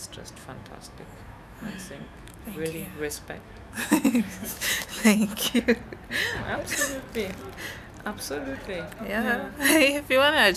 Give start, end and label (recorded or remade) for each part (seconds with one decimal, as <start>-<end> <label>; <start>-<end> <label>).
0.0-0.4 recorded; 0.4-5.6 remade; 5.6-10.6 recorded